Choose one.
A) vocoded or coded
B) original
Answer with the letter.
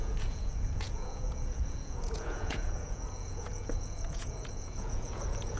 A